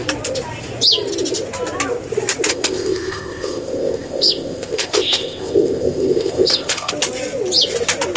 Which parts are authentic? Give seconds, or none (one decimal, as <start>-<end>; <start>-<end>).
0.0-2.5; 6.9-8.2